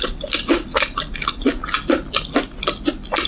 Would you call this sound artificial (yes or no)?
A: no